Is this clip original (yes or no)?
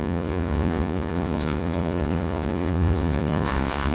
no